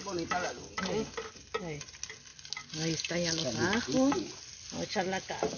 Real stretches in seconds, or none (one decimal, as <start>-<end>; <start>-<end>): 0.0-5.6